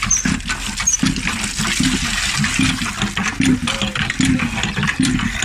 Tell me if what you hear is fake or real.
real